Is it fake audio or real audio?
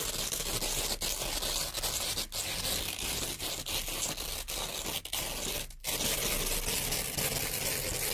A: real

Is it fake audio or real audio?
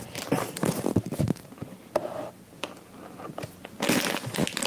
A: real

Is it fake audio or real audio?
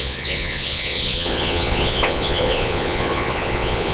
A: fake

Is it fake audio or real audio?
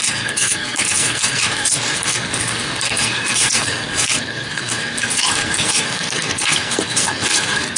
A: fake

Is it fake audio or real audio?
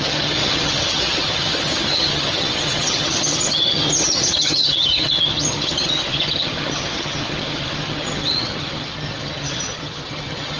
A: fake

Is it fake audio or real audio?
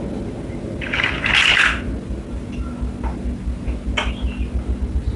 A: real